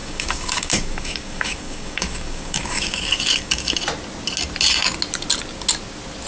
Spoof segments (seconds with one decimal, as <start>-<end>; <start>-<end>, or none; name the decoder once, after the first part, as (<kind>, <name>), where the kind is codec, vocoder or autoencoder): 0.0-3.8 (codec, DAC)